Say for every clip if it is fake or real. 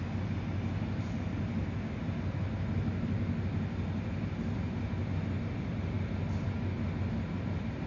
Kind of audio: real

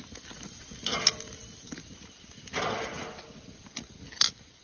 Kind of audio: real